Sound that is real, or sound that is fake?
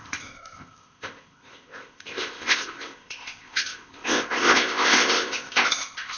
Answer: fake